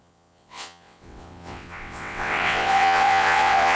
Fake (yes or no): yes